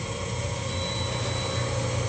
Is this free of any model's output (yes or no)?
yes